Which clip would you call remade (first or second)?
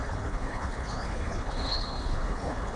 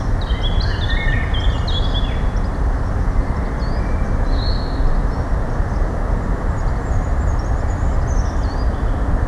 first